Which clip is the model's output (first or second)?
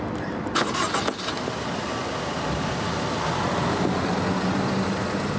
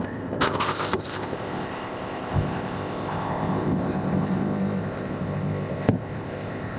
second